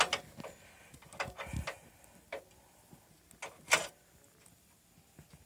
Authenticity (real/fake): real